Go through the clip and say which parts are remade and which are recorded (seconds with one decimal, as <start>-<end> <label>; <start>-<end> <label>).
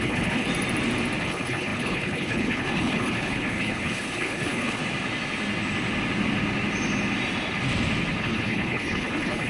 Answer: 0.0-0.5 remade; 0.5-1.2 recorded; 1.2-4.8 remade; 4.8-8.2 recorded; 8.2-9.5 remade